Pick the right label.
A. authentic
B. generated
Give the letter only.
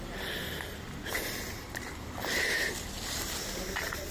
A